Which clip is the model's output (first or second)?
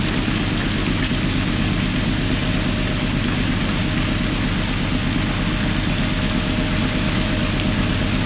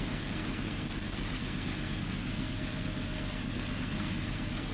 second